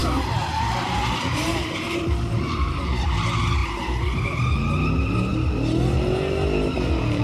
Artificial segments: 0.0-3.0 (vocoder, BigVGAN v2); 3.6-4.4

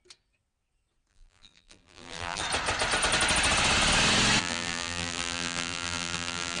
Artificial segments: 1.1-2.4 (vocoder, BigVGAN v2); 4.4-6.6

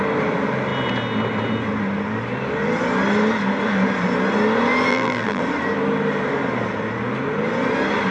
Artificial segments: 4.9-5.4 (vocoder, BigVGAN v2)

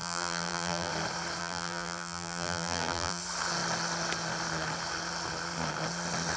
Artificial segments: 0.0-0.9 (vocoder, BigVGAN v2); 1.4-3.2

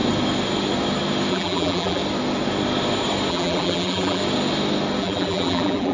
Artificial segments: 1.3-2.0 (vocoder, BigVGAN v2); 3.3-4.2; 5.0-5.9

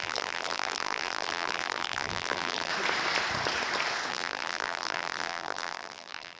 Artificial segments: 0.0-2.7 (vocoder, BigVGAN v2); 4.1-6.4

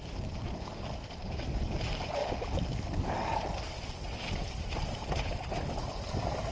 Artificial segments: 0.0-2.2 (vocoder, BigVGAN v2); 6.1-6.5

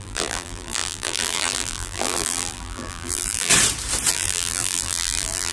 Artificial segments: 0.0-3.5 (vocoder, BigVGAN v2); 4.1-5.5